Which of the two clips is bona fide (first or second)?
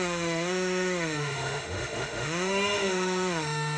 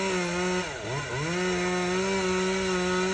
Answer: second